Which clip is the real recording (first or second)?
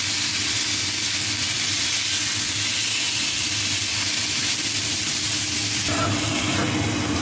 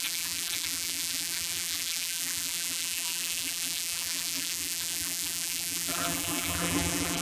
first